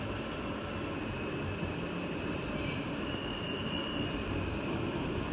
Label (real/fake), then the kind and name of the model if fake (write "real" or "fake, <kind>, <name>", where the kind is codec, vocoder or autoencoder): real